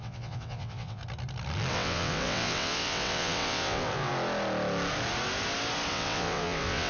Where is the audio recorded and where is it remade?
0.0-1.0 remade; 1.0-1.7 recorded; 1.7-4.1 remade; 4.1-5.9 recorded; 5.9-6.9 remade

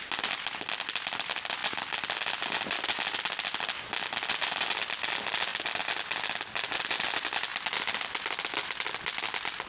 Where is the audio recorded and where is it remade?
0.0-9.7 recorded

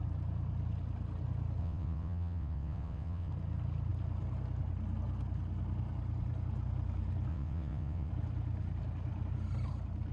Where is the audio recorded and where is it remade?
0.0-1.6 recorded; 1.6-3.3 remade; 3.3-7.3 recorded; 7.3-8.1 remade; 8.1-10.1 recorded

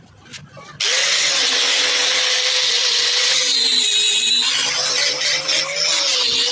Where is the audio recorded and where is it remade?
0.0-1.0 recorded; 1.0-1.6 remade; 1.6-2.8 recorded; 2.8-3.4 remade; 3.4-6.5 recorded

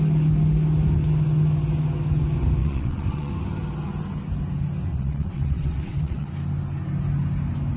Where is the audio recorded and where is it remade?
0.0-2.6 recorded; 2.6-3.3 remade; 3.3-4.9 recorded; 4.9-6.3 remade; 6.3-7.8 recorded

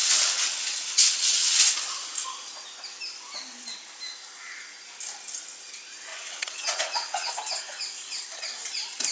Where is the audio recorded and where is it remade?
0.0-1.8 remade; 1.8-6.1 recorded; 6.1-7.3 remade; 7.3-9.1 recorded

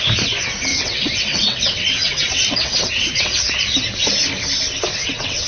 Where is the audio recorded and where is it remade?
0.0-0.7 recorded; 0.7-3.6 remade; 3.6-5.0 recorded; 5.0-5.5 remade